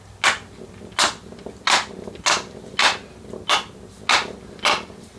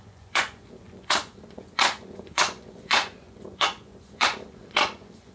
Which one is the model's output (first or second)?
second